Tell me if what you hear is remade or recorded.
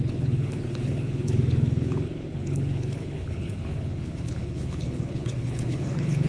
remade